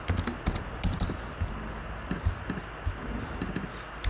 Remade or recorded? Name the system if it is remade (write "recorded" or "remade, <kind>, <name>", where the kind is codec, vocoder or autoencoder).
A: recorded